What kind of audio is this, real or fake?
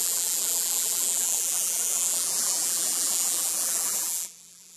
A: fake